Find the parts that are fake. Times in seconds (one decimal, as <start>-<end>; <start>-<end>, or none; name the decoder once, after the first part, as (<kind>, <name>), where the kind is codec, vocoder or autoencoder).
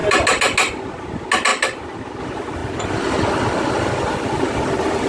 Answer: none